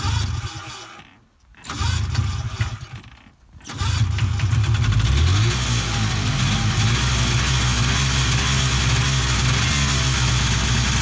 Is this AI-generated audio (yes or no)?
no